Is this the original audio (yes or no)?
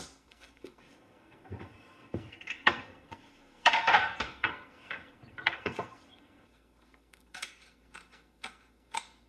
no